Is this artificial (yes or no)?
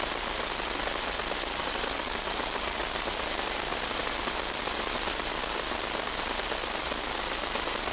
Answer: yes